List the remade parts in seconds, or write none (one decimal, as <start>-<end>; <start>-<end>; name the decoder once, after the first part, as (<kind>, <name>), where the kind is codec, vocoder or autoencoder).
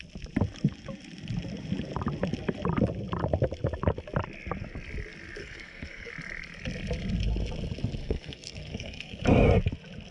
5.4-6.1 (codec, SNAC); 8.0-9.2